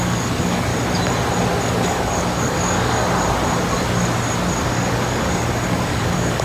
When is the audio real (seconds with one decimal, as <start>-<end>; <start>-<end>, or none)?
0.7-1.6; 3.0-4.7